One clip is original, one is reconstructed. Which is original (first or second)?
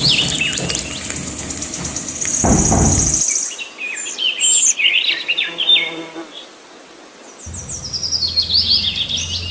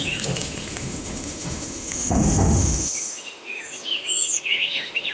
first